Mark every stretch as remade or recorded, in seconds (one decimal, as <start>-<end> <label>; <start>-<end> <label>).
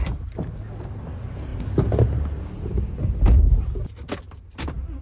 0.0-5.0 recorded